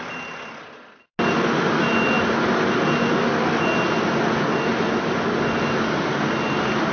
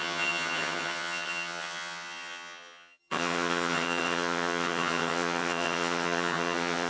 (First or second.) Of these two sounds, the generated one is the second